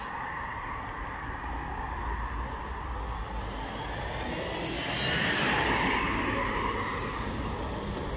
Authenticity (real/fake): real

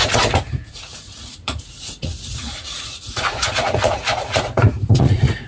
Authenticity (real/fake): fake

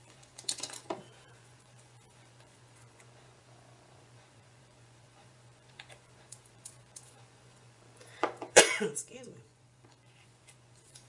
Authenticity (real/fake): fake